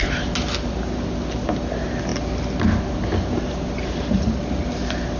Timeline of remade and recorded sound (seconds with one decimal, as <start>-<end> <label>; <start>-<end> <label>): 0.0-5.2 recorded

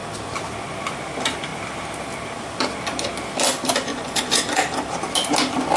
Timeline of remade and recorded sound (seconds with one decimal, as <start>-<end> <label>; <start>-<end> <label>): 0.0-3.9 recorded; 3.9-4.4 remade; 4.4-5.8 recorded

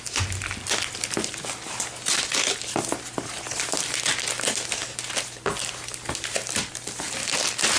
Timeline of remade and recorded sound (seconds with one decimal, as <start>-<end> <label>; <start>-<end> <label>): 0.0-7.8 recorded

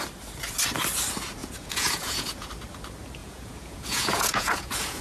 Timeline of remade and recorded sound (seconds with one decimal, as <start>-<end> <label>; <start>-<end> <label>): 0.0-1.4 recorded; 1.4-2.5 remade; 2.5-3.2 recorded; 3.2-5.0 remade